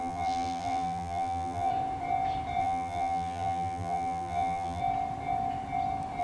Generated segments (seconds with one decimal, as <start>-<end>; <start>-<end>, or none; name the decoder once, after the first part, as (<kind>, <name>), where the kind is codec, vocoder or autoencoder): 0.0-1.7 (vocoder, BigVGAN v2); 2.6-4.8